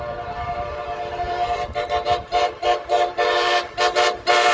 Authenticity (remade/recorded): remade